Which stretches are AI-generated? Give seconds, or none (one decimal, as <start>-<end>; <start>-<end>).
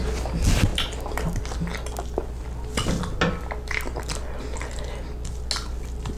none